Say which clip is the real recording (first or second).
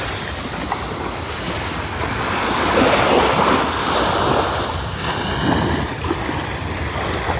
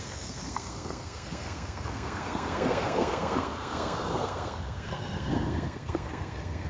first